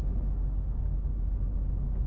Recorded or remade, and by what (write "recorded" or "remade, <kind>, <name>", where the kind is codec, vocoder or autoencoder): recorded